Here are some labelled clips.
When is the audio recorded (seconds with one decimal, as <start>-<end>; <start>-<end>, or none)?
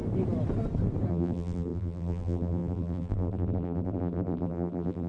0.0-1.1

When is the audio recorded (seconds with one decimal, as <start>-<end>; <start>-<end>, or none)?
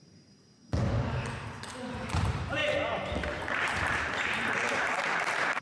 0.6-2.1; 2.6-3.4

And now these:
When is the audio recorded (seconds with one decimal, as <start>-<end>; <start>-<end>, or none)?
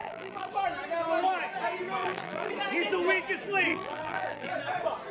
0.5-2.0; 2.5-3.7; 4.5-5.1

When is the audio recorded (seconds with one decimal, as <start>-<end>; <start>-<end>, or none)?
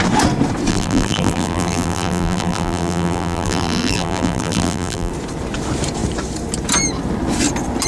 0.0-0.7; 5.1-7.9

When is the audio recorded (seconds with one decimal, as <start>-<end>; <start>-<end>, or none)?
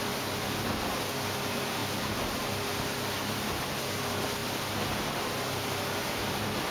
0.0-6.7